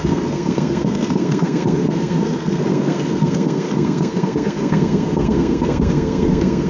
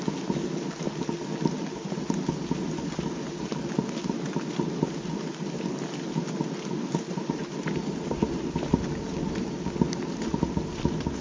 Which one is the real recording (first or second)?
second